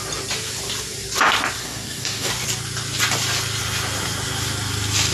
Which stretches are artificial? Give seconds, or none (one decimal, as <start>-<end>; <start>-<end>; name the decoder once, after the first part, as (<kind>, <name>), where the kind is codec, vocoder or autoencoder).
1.6-2.3 (codec, DAC)